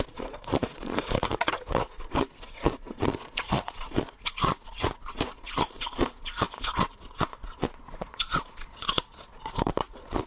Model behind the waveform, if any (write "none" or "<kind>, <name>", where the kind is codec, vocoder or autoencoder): vocoder, Vocos